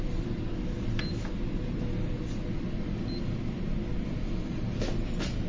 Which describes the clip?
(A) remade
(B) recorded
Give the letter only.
B